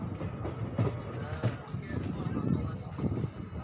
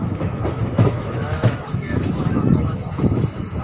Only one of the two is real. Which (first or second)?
first